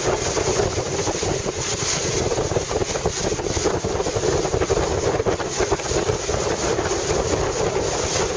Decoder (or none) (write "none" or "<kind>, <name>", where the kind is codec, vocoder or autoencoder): none